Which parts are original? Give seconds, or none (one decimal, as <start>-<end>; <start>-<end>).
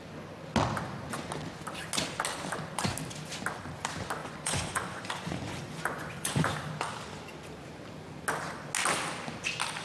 0.0-4.2; 6.5-9.8